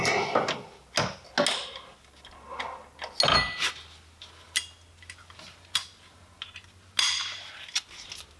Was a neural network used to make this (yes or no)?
no